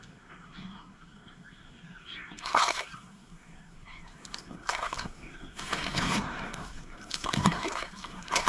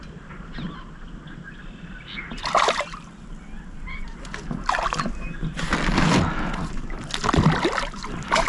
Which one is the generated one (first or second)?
first